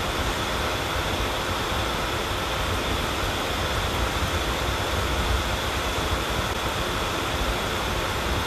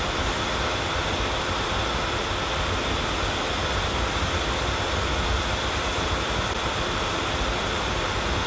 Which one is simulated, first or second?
first